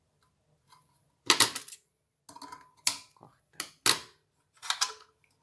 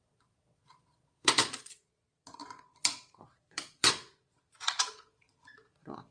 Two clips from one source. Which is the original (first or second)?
first